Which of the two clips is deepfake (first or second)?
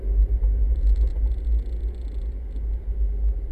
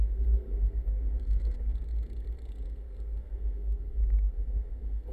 second